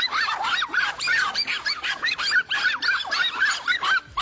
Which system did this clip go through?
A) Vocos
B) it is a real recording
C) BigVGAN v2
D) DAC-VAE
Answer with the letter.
C